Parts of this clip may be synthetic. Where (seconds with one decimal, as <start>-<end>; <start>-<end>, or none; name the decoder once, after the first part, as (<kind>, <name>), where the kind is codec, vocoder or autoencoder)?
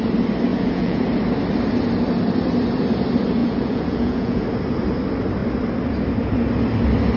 0.5-1.0 (vocoder, Vocos); 3.4-4.4